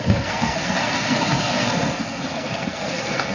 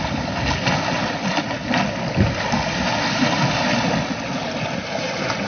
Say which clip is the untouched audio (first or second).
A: second